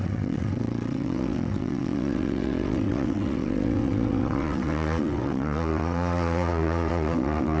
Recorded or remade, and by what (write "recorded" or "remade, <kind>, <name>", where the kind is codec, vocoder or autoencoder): remade, vocoder, WaveNeXt